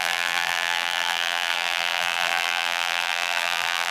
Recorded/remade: remade